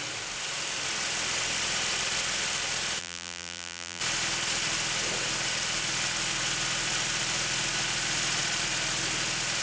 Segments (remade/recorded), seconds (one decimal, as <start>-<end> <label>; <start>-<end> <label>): 0.0-3.0 recorded; 3.0-4.0 remade; 4.0-9.6 recorded